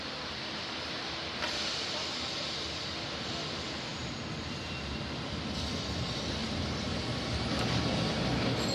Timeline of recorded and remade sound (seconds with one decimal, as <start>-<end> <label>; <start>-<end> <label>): 0.0-6.4 recorded; 6.4-7.0 remade; 7.0-8.7 recorded